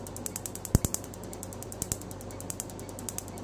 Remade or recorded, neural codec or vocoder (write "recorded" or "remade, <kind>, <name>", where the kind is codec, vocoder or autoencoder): recorded